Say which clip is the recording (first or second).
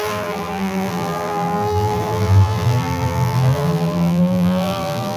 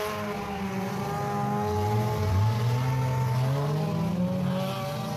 second